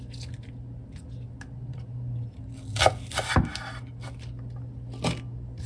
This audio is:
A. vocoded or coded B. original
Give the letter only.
B